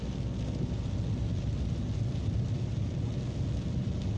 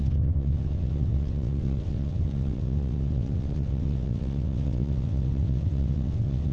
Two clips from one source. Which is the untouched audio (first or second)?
first